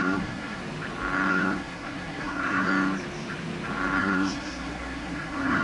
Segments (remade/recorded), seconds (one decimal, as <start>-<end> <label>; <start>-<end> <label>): 0.0-0.6 remade; 0.6-1.3 recorded; 1.3-2.7 remade; 2.7-4.0 recorded; 4.0-5.6 remade